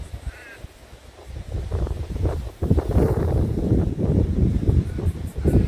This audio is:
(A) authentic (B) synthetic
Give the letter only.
B